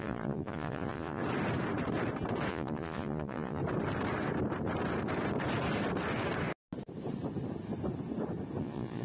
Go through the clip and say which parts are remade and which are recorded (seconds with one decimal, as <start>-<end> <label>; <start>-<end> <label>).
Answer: 0.0-1.2 remade; 1.2-2.5 recorded; 2.5-3.6 remade; 3.6-8.6 recorded; 8.6-9.0 remade